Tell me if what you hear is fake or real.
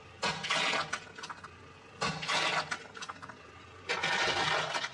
real